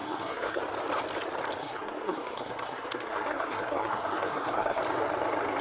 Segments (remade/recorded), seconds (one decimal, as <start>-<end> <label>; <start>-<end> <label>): 0.0-0.6 remade; 0.6-1.6 recorded; 1.6-4.8 remade; 4.8-5.6 recorded